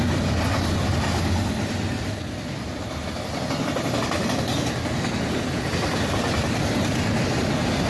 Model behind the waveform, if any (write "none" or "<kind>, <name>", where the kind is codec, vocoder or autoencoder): none